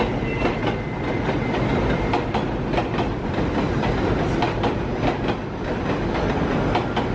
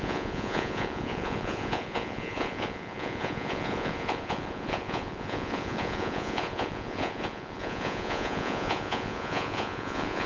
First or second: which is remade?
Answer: second